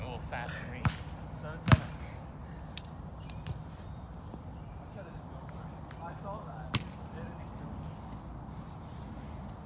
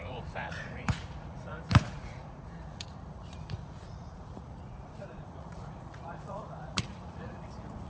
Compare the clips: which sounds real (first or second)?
first